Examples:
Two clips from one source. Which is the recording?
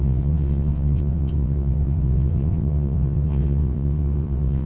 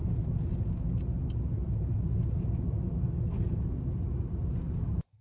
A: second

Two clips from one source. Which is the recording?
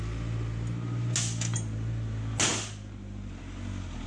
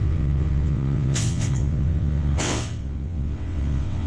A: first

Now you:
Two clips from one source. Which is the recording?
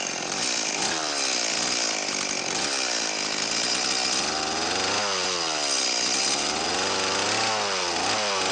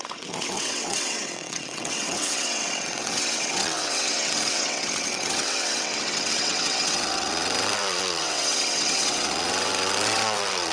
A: first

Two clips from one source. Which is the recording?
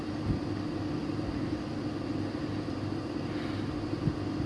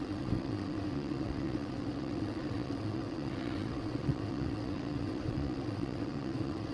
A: first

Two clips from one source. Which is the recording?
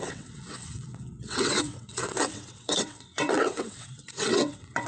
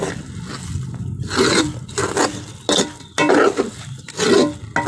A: second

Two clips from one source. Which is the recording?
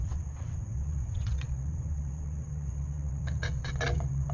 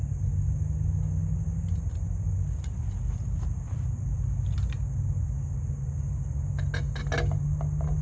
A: second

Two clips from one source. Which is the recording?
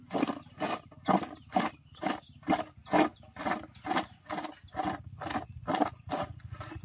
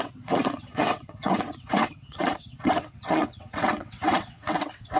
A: first